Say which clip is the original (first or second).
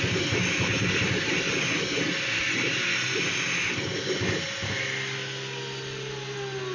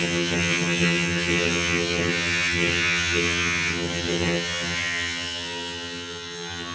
first